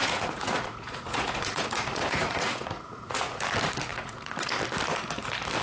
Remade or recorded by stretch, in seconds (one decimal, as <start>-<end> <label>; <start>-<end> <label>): 0.0-3.4 remade; 3.4-3.9 recorded; 3.9-4.5 remade; 4.5-5.6 recorded